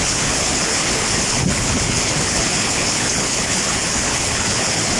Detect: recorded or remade remade